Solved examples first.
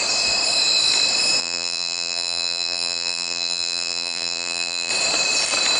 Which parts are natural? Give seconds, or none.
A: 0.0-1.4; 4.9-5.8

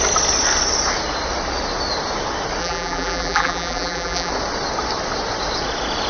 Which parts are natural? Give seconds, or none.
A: 0.0-2.6; 4.3-6.1

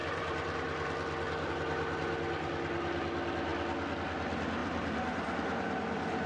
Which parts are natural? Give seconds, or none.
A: 1.5-4.6

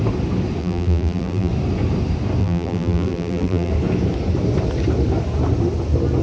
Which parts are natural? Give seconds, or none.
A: 0.0-0.6; 1.5-2.4; 3.7-6.2

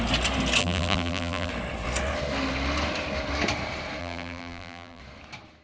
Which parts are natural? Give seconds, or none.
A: 0.0-0.6; 1.5-4.0; 5.0-5.6

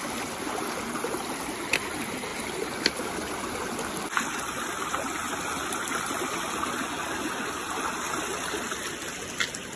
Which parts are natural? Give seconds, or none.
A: 0.0-9.8

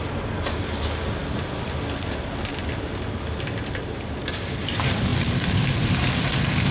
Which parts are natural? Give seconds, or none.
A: none

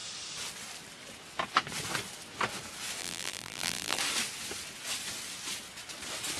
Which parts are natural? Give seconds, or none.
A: 0.0-3.0; 4.0-6.4